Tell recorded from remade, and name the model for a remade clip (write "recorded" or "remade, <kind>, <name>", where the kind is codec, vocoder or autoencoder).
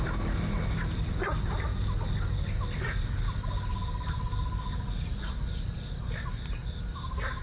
recorded